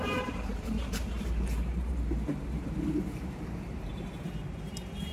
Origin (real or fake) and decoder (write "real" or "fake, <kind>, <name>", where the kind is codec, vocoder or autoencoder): fake, vocoder, BigVGAN v2